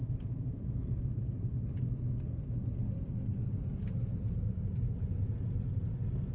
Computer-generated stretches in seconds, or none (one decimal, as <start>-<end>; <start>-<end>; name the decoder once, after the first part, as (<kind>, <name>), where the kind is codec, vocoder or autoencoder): 0.4-1.0 (vocoder, BigVGAN v2); 4.1-5.4